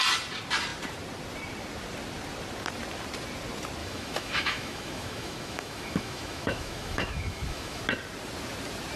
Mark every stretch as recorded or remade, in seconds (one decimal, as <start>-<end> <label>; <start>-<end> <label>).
0.0-3.8 recorded; 3.8-7.8 remade; 7.8-9.0 recorded